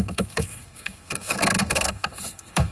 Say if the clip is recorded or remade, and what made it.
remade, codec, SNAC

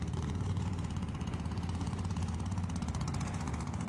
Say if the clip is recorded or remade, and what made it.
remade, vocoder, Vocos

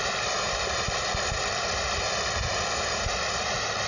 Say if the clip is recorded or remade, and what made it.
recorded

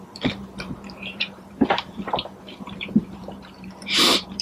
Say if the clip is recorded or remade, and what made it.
remade, vocoder, BigVGAN v2